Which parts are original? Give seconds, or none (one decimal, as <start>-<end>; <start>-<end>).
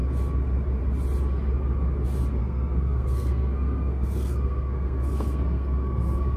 0.0-2.4